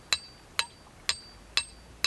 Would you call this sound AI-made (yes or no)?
no